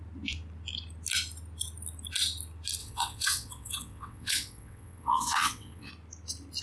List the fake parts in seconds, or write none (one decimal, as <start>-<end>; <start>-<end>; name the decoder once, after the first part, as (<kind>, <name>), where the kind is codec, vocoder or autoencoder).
2.8-5.9 (vocoder, WaveNeXt)